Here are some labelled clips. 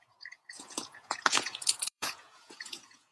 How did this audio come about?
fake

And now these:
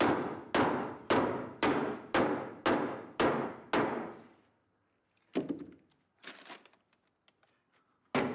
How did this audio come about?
real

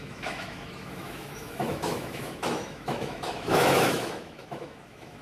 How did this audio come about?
fake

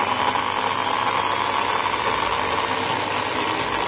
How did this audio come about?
real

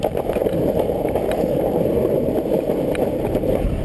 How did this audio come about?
fake